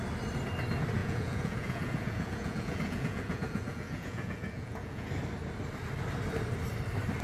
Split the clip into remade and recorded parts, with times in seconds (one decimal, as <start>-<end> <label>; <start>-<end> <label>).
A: 0.0-1.0 recorded; 1.0-5.1 remade; 5.1-7.2 recorded